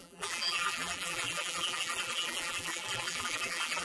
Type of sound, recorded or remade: remade